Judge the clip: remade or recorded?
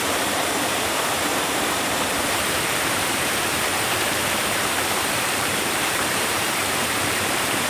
remade